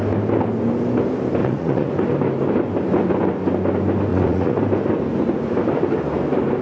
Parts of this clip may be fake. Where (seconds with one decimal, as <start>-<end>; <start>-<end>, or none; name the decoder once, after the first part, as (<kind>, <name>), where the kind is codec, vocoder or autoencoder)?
1.4-1.9 (vocoder, Vocos); 4.1-4.6